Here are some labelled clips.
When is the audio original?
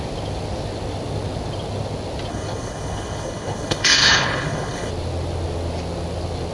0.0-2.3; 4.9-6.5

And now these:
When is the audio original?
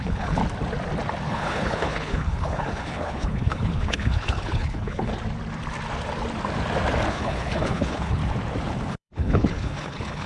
0.4-1.3; 5.1-7.1; 8.2-8.9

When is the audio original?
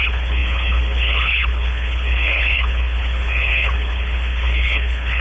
none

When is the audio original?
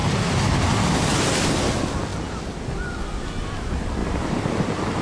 0.0-5.0